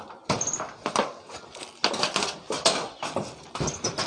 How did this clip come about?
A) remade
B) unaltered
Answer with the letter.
B